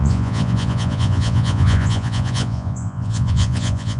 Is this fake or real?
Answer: fake